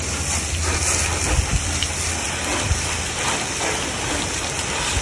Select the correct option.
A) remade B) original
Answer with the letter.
B